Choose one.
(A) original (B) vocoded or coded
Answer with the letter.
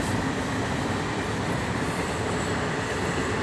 A